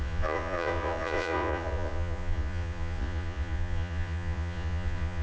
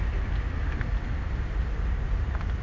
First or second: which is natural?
second